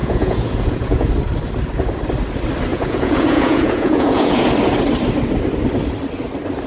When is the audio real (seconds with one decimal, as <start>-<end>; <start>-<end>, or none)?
1.1-2.7; 4.5-6.7